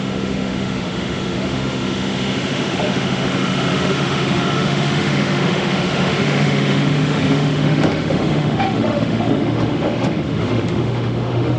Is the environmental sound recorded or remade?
remade